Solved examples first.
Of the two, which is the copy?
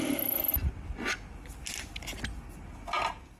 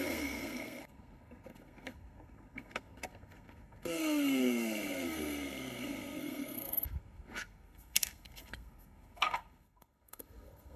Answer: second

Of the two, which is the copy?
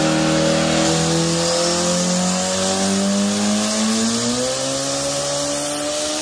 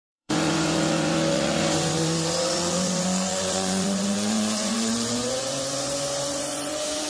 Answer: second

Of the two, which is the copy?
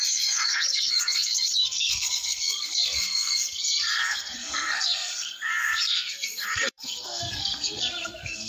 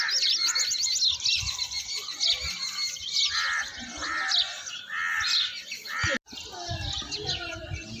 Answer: first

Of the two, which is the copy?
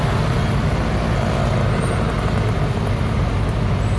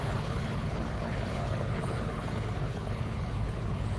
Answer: second